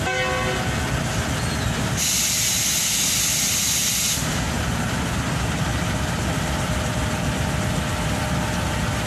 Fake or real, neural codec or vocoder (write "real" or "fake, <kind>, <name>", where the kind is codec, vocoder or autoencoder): real